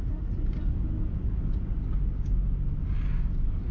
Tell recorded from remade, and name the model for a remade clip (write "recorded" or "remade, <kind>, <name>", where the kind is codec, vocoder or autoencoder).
recorded